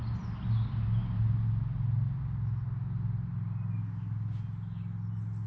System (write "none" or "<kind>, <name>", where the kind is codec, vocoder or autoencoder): none